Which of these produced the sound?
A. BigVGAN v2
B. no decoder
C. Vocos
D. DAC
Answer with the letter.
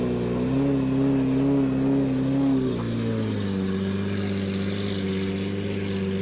B